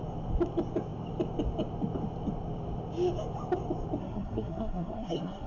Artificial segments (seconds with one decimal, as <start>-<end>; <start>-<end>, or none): 4.0-5.5